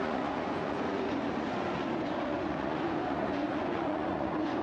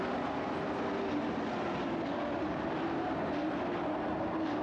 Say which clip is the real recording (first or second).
second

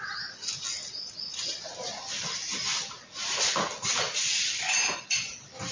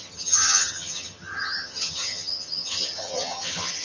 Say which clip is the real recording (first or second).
first